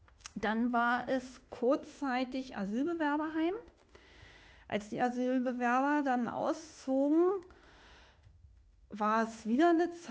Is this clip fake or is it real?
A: fake